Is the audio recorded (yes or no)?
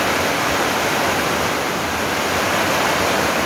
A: no